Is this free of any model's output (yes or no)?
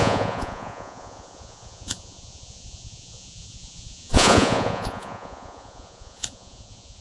no